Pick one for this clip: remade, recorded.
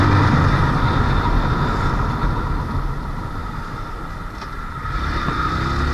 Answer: recorded